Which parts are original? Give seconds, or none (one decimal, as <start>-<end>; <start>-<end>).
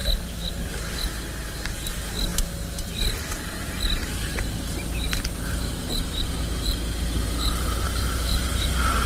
0.5-4.3